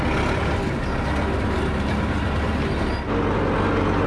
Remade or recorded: recorded